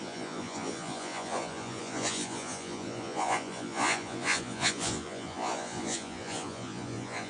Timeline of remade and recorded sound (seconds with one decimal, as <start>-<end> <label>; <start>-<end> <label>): 0.0-7.3 remade